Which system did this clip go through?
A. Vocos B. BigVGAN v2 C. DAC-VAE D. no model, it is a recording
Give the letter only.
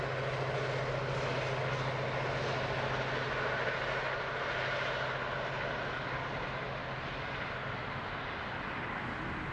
D